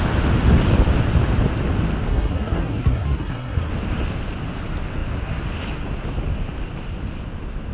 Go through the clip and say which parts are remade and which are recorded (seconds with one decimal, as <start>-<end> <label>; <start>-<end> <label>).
0.0-2.1 recorded; 2.1-3.7 remade; 3.7-7.7 recorded